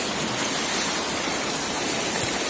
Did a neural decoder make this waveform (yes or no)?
no